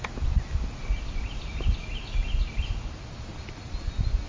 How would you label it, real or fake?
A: real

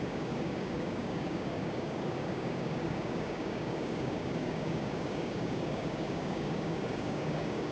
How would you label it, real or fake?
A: fake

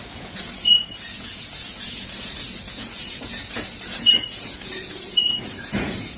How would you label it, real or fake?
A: fake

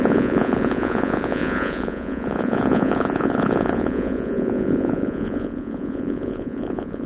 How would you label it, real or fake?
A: fake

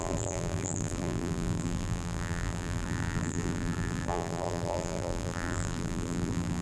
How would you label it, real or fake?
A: fake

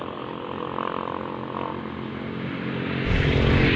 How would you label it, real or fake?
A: real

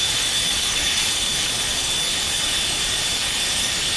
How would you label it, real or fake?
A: fake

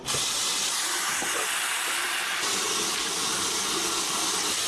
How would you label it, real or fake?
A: real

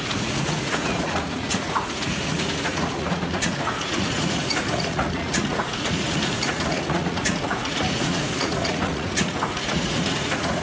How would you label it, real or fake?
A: fake